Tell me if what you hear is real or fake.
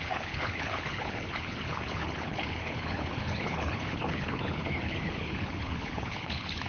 fake